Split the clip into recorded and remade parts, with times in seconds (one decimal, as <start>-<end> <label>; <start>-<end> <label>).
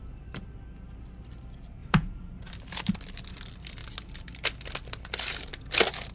0.0-1.8 recorded; 1.8-2.9 remade; 2.9-6.1 recorded